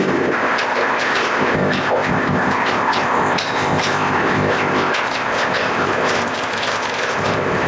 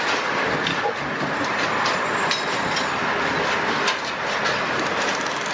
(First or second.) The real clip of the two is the second